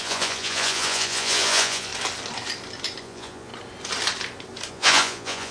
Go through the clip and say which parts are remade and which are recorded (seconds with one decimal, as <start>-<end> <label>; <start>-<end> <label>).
0.0-1.9 remade; 1.9-3.0 recorded; 3.0-3.5 remade; 3.5-4.7 recorded; 4.7-5.5 remade